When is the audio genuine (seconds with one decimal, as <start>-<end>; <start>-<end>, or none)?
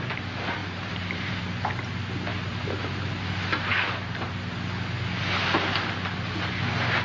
0.0-0.6; 1.4-7.0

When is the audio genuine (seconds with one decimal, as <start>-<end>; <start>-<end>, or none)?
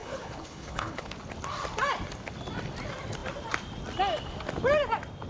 1.1-5.3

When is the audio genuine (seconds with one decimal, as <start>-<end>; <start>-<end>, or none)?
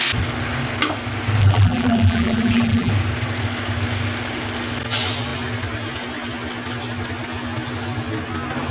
0.0-1.4; 2.9-8.7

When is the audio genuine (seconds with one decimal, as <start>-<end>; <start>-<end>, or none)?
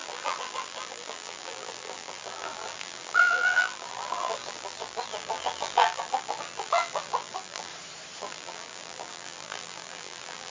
7.7-8.2